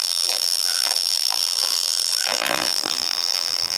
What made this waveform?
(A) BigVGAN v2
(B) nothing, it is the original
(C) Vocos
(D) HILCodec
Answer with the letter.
A